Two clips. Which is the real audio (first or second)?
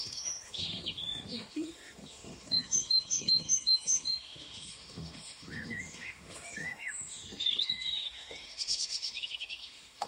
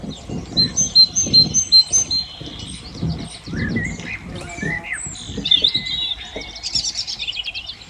second